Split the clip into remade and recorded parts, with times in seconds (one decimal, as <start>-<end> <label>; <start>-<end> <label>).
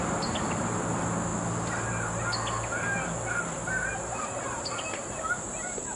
0.0-3.9 recorded; 3.9-6.0 remade